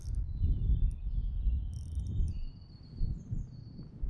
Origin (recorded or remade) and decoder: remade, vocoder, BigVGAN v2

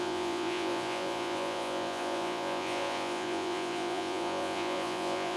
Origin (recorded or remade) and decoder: remade, vocoder, Vocos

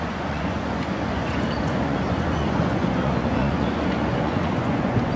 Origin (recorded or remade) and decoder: remade, vocoder, Vocos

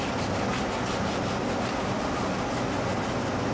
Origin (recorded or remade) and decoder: recorded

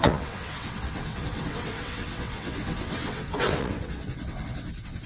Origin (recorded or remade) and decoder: remade, vocoder, WaveNeXt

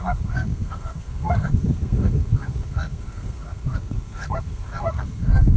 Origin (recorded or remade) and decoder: remade, codec, SNAC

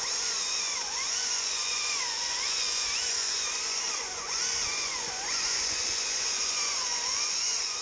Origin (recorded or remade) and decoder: remade, vocoder, Vocos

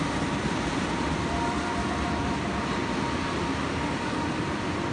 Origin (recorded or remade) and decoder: remade, vocoder, BigVGAN v2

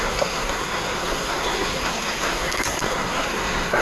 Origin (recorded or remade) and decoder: remade, codec, SNAC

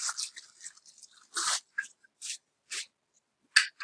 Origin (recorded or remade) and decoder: recorded